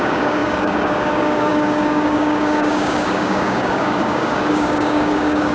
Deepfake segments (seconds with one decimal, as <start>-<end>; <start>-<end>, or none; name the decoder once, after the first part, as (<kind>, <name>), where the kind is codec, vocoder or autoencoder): 0.0-5.5 (codec, DAC)